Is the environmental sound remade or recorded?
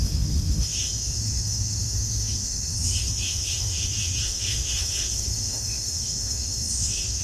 remade